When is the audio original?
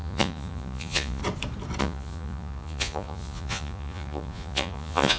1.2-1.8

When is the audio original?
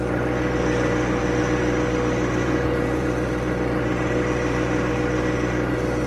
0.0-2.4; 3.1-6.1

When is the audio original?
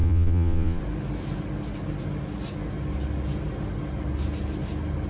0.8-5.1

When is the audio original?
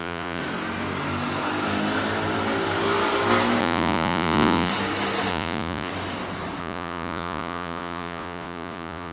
0.4-3.6; 4.7-5.3; 5.9-6.6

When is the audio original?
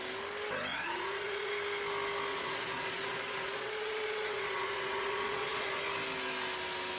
0.0-0.7; 1.5-2.3; 5.8-7.0